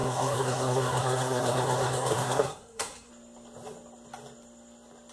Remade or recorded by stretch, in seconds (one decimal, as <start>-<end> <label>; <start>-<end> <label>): 0.0-3.1 remade; 3.1-5.1 recorded